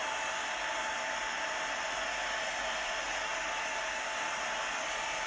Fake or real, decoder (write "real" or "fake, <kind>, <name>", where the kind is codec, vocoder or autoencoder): real